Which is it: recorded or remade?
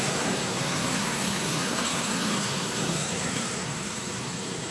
remade